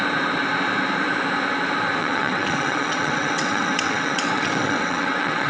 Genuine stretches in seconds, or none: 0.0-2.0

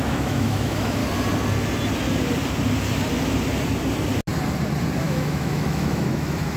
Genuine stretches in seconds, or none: 1.0-5.0

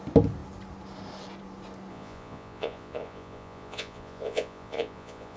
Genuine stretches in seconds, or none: 0.0-1.9

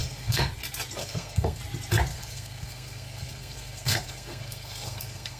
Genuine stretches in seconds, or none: 0.5-1.0; 1.6-2.1